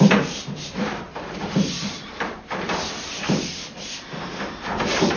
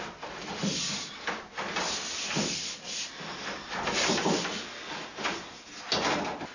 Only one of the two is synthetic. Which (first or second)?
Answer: first